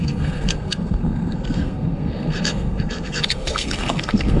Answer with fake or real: fake